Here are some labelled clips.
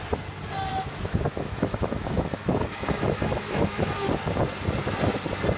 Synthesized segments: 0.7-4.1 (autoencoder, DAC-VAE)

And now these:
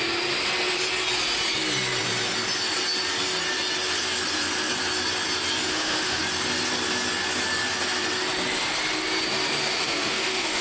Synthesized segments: 5.7-6.2 (autoencoder, DAC-VAE); 9.7-10.6

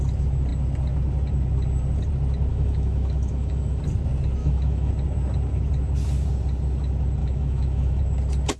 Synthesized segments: 2.5-3.8 (autoencoder, DAC-VAE); 4.4-4.9; 7.2-8.0